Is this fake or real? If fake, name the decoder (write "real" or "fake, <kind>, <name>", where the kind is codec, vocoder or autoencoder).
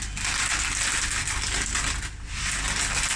real